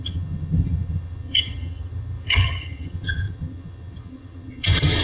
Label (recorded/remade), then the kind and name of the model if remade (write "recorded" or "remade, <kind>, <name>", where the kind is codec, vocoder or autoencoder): remade, vocoder, HiFi-GAN